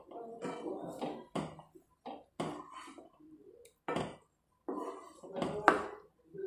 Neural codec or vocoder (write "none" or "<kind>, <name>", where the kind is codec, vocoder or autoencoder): none